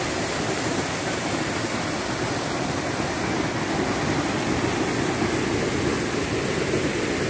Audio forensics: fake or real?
real